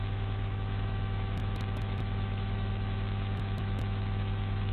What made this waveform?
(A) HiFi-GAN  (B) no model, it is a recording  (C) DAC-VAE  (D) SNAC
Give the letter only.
C